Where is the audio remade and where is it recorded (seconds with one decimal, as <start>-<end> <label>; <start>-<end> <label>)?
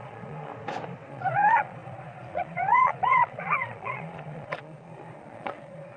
0.0-0.5 remade; 0.5-1.1 recorded; 1.1-6.0 remade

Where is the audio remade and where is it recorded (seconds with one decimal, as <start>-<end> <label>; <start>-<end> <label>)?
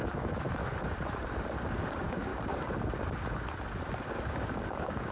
0.0-0.6 remade; 0.6-1.7 recorded; 1.7-2.3 remade; 2.3-4.1 recorded; 4.1-5.1 remade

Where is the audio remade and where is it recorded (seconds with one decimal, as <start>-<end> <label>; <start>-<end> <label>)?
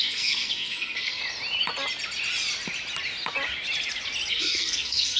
0.0-1.2 remade; 1.2-4.3 recorded; 4.3-5.2 remade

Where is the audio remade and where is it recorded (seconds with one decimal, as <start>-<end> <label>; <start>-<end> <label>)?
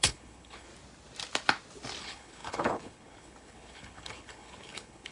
0.0-0.7 remade; 0.7-2.0 recorded; 2.0-5.1 remade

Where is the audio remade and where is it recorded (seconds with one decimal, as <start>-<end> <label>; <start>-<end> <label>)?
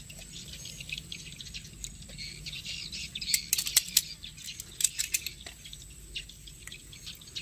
0.0-5.7 recorded; 5.7-6.8 remade; 6.8-7.4 recorded